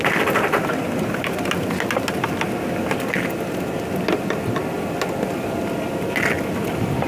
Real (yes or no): yes